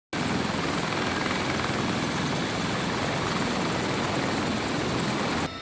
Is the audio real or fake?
real